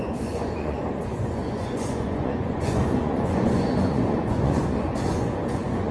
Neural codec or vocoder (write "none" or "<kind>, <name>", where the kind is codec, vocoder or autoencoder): vocoder, Vocos